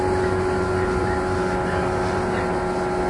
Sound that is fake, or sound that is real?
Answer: real